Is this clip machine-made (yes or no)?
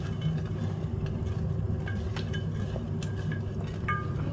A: no